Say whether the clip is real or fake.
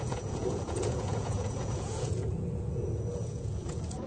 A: fake